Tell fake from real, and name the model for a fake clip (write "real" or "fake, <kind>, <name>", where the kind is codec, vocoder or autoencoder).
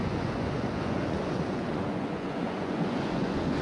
fake, vocoder, Vocos